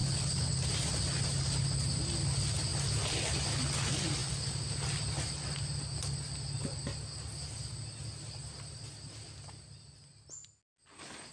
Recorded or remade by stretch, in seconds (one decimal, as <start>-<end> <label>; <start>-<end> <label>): 0.0-0.5 remade; 0.5-11.3 recorded